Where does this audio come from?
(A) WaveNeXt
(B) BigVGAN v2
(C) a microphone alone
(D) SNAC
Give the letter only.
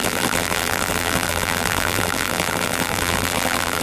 B